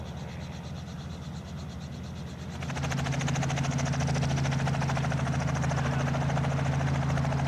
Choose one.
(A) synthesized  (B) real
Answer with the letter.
B